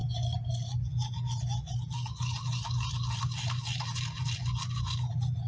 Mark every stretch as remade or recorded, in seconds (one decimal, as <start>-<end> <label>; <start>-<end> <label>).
0.0-5.5 recorded